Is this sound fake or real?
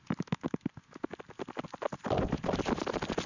real